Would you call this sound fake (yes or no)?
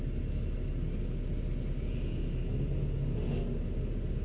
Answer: no